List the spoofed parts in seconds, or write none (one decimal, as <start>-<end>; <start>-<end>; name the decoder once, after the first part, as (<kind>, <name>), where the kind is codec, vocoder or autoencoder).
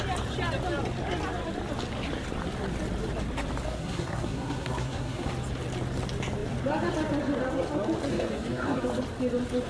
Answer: 3.7-5.3 (codec, SNAC); 8.1-8.8